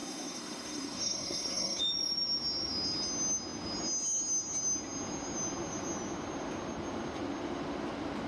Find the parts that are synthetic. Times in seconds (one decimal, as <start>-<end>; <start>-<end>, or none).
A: 0.0-1.8